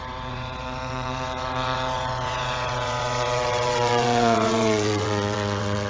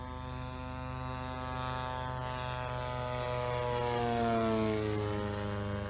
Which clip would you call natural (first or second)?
second